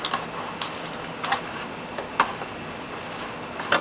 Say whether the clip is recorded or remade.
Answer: recorded